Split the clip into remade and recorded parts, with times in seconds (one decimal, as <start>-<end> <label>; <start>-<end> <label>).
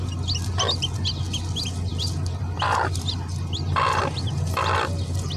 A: 0.0-5.4 recorded